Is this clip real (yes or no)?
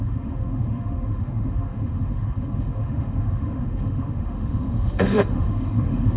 no